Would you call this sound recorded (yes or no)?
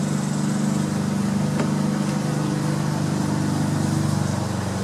yes